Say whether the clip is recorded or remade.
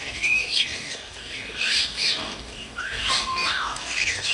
remade